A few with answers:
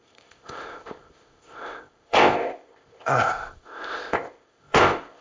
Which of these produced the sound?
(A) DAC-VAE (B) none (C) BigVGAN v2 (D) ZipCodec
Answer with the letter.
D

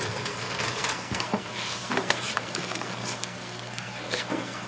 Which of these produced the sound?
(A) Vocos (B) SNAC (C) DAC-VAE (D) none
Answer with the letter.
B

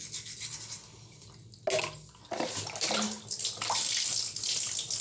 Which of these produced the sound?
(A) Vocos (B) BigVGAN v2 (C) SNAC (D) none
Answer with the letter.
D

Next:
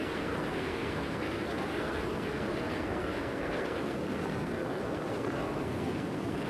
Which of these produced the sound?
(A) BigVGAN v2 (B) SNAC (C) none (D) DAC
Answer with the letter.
B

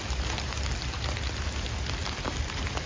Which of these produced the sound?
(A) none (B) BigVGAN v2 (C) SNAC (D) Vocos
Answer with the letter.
A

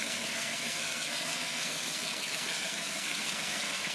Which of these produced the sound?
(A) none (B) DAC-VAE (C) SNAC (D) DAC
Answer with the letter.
C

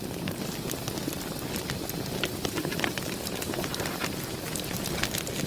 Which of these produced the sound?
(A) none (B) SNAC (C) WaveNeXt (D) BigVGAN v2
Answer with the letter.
A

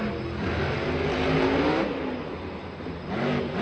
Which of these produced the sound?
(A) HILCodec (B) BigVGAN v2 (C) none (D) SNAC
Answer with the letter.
C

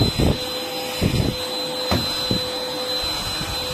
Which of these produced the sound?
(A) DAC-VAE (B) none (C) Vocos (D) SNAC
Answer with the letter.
B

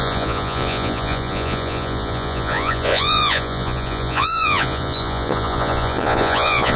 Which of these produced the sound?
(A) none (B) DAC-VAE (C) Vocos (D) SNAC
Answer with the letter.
C